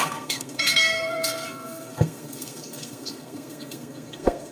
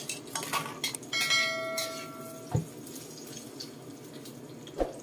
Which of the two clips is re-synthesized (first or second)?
first